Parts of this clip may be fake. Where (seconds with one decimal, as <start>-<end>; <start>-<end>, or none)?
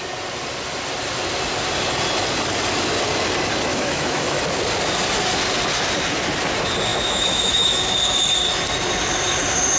3.7-4.4; 6.9-7.8